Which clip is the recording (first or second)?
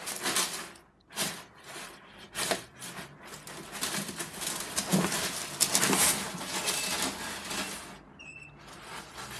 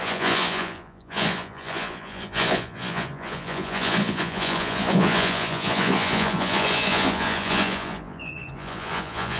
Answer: first